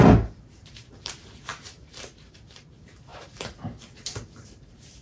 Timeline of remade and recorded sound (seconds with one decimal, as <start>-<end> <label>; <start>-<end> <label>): 0.0-5.0 remade